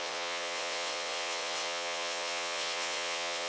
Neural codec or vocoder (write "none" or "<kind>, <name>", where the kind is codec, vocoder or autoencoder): vocoder, WaveNeXt